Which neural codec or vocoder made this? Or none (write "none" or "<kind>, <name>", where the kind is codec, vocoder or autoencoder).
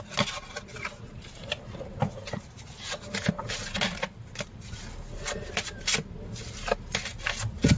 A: none